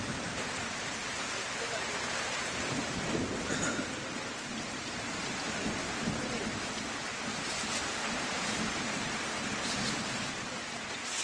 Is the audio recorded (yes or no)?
no